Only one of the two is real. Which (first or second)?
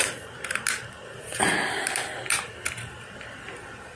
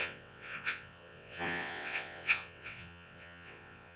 first